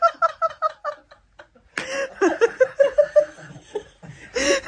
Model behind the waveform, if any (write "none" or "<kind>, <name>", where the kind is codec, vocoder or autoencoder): none